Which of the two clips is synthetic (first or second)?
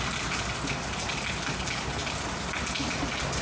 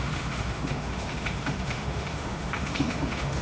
second